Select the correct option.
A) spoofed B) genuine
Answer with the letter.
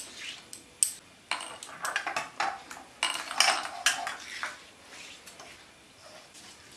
B